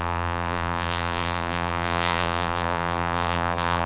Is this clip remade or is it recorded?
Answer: remade